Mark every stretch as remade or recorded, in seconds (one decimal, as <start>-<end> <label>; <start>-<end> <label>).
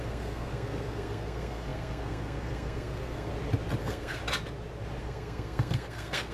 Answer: 0.0-3.3 remade; 3.3-3.8 recorded; 3.8-4.2 remade; 4.2-5.0 recorded; 5.0-6.3 remade